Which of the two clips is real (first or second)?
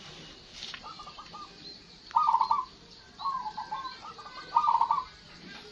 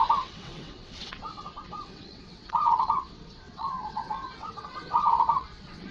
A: first